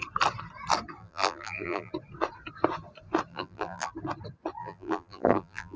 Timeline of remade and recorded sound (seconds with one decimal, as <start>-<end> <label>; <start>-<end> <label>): 0.0-1.0 recorded; 1.0-1.9 remade; 1.9-3.3 recorded; 3.3-3.9 remade; 3.9-4.6 recorded; 4.6-5.8 remade